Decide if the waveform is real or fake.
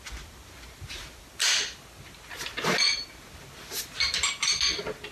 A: real